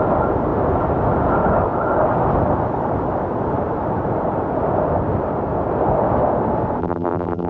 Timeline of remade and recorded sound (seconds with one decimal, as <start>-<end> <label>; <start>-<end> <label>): 0.0-6.8 recorded; 6.8-7.5 remade